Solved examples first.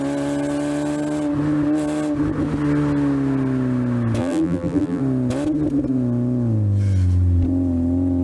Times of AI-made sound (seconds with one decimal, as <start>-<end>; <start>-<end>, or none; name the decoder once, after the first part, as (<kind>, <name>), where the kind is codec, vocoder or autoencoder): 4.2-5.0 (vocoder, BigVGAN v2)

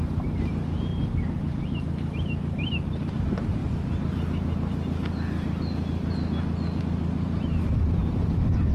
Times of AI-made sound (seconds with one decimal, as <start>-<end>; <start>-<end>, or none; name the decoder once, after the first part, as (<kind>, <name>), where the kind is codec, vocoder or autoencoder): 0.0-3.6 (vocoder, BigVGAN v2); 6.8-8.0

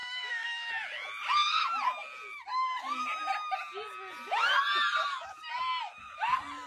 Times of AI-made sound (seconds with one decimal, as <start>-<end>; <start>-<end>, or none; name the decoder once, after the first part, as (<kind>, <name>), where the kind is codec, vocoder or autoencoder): 0.0-0.7 (autoencoder, DAC-VAE)

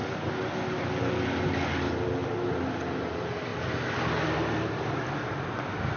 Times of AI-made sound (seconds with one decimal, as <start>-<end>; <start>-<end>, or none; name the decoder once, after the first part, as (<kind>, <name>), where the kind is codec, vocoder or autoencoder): none

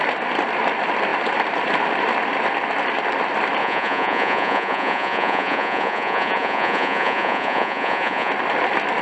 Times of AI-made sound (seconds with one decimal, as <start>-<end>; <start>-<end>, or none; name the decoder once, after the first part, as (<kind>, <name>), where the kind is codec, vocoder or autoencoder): 3.6-8.3 (vocoder, Vocos)